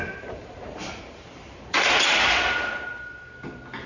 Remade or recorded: recorded